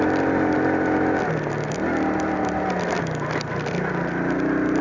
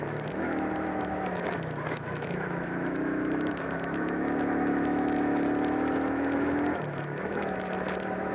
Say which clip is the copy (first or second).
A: second